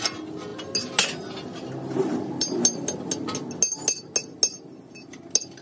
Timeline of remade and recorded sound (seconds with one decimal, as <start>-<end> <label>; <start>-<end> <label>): 0.0-5.6 recorded